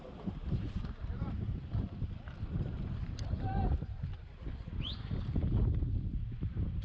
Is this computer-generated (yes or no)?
yes